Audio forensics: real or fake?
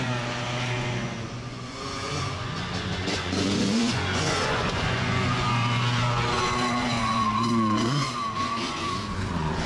fake